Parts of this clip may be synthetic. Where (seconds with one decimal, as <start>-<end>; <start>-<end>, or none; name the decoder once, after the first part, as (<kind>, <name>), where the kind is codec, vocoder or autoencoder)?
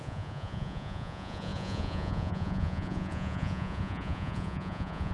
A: 0.0-5.1 (vocoder, Vocos)